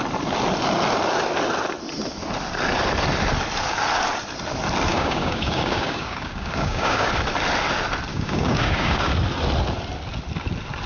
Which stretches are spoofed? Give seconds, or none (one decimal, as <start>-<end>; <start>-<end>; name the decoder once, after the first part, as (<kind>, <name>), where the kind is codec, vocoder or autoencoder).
4.9-7.1 (codec, DAC); 8.1-9.1

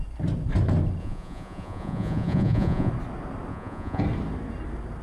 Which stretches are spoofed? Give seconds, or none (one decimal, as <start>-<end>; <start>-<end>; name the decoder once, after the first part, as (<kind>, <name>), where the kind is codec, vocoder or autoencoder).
1.0-2.9 (vocoder, Vocos); 3.5-4.0

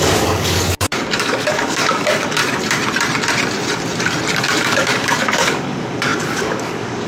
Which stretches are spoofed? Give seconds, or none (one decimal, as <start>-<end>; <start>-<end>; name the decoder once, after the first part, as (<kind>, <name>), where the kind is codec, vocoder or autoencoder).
0.0-2.4 (codec, DAC); 4.4-7.1